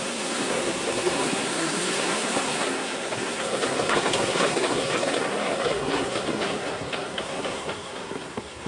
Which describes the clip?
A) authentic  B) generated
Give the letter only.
B